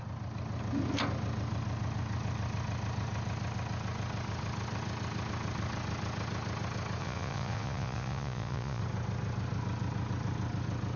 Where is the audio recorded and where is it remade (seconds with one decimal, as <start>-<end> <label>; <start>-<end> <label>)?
0.0-7.0 recorded; 7.0-8.8 remade; 8.8-11.0 recorded